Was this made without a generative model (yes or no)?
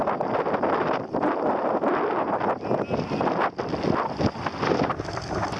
yes